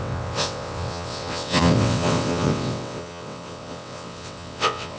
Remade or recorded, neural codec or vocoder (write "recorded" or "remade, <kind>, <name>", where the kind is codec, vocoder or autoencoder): remade, vocoder, WaveNeXt